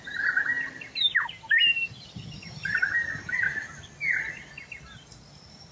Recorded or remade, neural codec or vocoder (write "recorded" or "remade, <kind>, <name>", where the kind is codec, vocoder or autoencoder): recorded